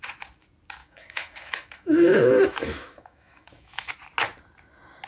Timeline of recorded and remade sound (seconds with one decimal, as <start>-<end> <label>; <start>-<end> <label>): 0.0-0.8 recorded; 0.8-3.9 remade; 3.9-5.1 recorded